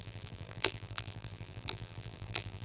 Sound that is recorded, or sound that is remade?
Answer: remade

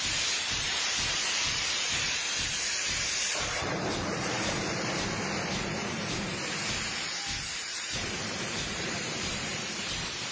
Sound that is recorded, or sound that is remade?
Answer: remade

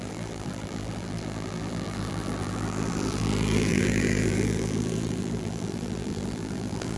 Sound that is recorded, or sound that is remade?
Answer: remade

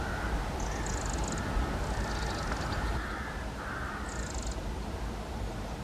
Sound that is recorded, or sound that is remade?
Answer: recorded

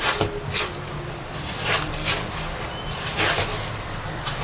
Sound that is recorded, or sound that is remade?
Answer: recorded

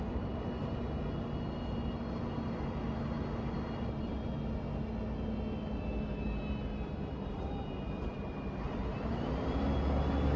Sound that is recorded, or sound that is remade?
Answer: recorded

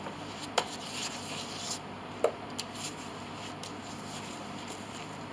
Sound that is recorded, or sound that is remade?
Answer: recorded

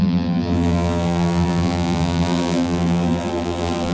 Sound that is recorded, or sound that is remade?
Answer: remade